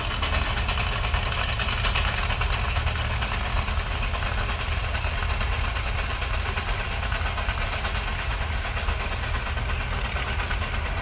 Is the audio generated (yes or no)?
no